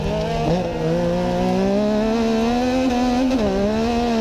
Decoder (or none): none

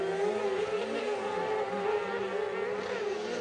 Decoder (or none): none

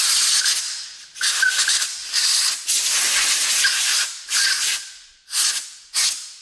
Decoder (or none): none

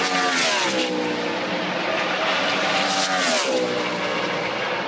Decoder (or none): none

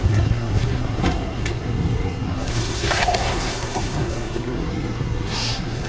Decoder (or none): codec, SNAC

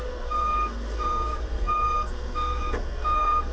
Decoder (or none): codec, SNAC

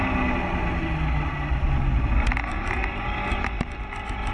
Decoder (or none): none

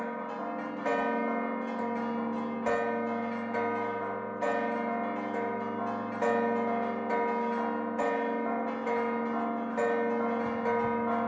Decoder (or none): none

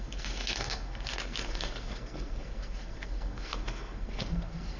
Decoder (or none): codec, SNAC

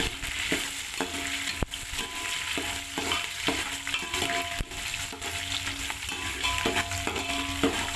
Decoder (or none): none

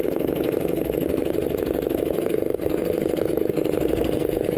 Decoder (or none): codec, SNAC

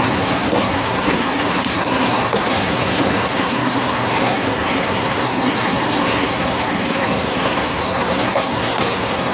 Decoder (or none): codec, SNAC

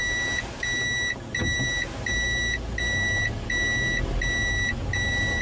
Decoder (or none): none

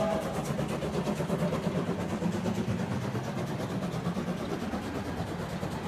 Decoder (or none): none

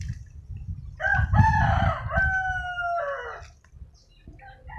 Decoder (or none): none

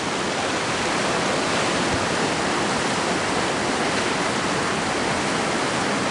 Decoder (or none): none